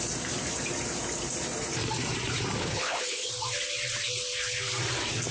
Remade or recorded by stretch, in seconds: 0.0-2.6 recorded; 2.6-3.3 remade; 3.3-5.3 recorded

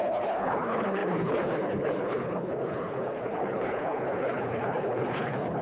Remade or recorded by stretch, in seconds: 0.0-5.6 remade

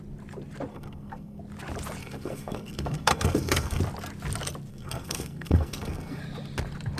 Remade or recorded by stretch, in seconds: 0.0-0.7 recorded; 0.7-1.4 remade; 1.4-2.0 recorded; 2.0-3.8 remade; 3.8-4.7 recorded; 4.7-6.2 remade; 6.2-7.0 recorded

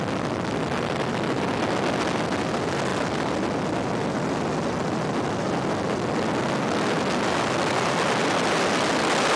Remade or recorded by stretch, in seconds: 0.0-9.4 recorded

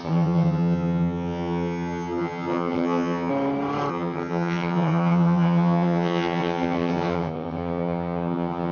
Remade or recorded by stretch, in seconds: 0.0-3.3 remade; 3.3-3.9 recorded; 3.9-8.7 remade

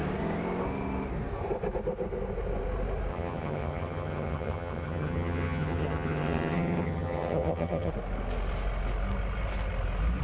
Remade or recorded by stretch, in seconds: 0.0-3.1 recorded; 3.1-7.9 remade; 7.9-10.2 recorded

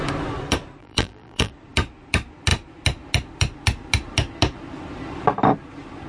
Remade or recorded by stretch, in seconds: 0.0-0.8 recorded; 0.8-1.5 remade; 1.5-6.1 recorded